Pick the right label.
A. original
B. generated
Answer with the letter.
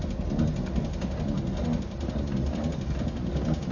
A